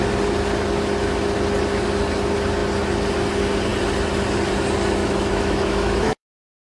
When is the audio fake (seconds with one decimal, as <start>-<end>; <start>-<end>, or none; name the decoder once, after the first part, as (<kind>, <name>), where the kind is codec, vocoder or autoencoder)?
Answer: 5.0-6.6 (autoencoder, DAC-VAE)